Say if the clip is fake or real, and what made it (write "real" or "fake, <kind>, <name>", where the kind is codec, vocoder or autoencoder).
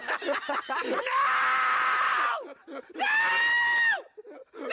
real